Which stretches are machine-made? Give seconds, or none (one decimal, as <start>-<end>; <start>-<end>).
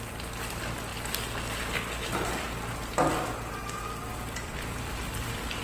4.1-5.6